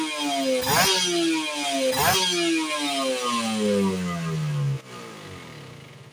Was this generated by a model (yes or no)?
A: no